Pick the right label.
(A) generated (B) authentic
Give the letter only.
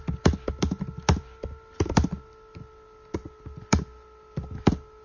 B